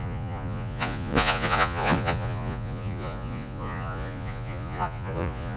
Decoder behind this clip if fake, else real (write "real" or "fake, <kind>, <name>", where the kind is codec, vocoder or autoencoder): fake, vocoder, Vocos